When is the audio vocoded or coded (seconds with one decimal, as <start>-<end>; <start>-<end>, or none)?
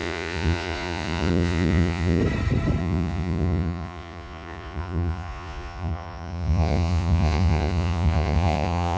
0.0-2.2; 2.8-9.0